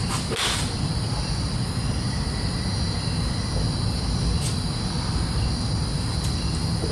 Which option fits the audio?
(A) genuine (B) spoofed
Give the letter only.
A